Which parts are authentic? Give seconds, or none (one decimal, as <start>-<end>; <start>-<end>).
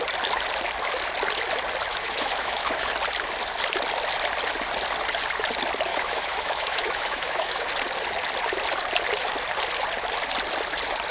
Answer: 0.0-1.9; 2.9-5.9; 7.7-11.1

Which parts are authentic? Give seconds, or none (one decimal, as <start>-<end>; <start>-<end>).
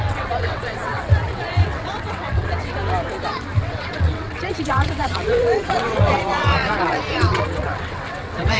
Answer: 2.8-3.6